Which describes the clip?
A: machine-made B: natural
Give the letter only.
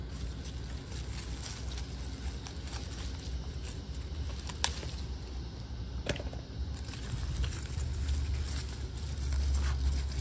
B